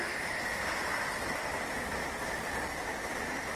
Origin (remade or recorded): recorded